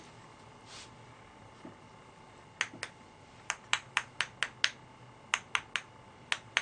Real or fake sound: real